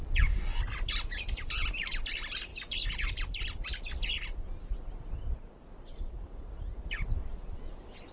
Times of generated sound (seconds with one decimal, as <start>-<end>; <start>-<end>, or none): 5.9-7.6